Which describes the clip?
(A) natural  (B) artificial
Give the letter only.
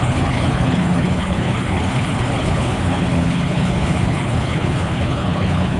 B